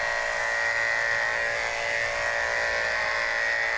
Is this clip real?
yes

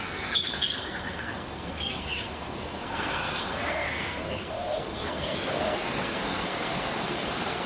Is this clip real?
no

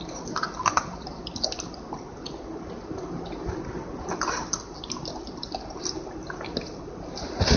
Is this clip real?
yes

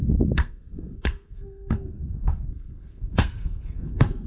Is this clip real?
no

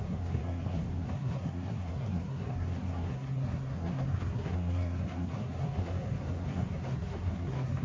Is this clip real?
no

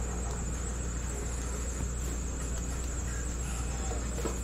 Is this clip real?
yes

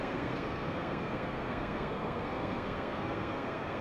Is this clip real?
no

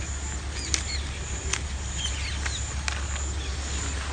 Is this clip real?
yes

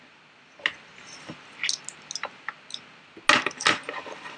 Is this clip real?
yes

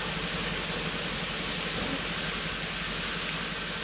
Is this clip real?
yes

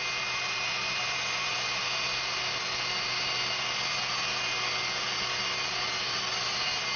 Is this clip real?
yes